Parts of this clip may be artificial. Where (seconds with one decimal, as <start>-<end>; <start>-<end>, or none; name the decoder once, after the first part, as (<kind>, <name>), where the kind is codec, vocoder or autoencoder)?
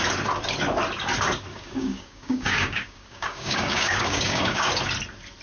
1.5-4.7 (codec, DAC)